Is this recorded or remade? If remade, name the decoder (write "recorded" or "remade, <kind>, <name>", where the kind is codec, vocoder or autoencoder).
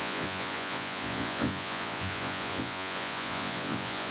remade, vocoder, Vocos